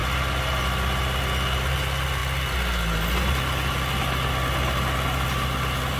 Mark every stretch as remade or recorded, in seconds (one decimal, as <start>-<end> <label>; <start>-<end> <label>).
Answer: 0.0-6.0 recorded